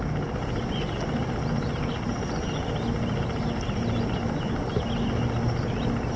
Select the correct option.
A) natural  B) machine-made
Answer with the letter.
A